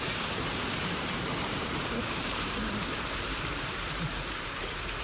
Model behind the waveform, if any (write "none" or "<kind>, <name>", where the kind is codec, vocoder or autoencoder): vocoder, BigVGAN v2